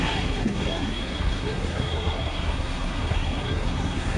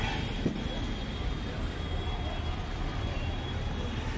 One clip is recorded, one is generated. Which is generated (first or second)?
first